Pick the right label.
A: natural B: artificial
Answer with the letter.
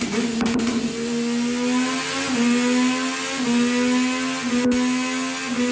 A